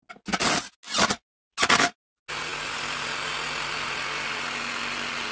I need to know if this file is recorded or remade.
recorded